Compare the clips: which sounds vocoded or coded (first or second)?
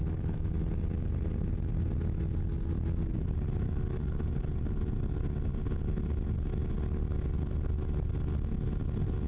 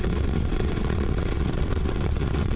second